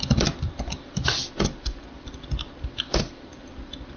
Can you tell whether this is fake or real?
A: real